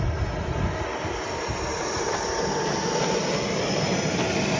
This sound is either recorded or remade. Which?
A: recorded